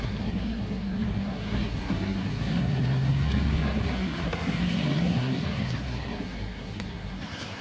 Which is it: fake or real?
fake